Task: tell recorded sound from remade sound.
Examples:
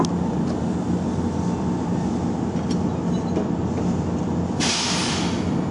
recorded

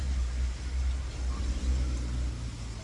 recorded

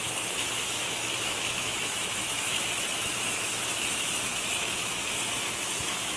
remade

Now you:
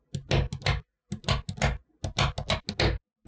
recorded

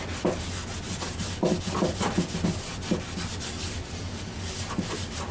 recorded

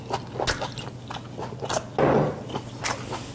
recorded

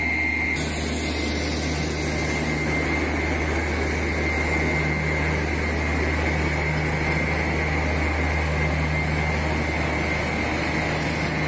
recorded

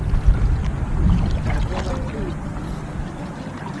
recorded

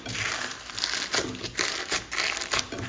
recorded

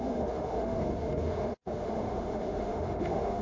remade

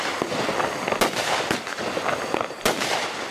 recorded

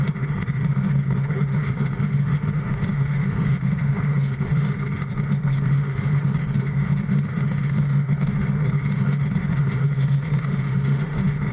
remade